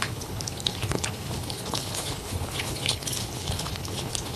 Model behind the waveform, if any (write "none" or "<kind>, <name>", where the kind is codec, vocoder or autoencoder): codec, HILCodec